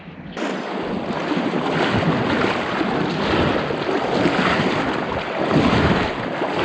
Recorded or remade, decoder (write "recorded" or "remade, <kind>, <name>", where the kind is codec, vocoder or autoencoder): recorded